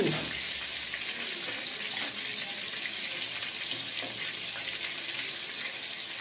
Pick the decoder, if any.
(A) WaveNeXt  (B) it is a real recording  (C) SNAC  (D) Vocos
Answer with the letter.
B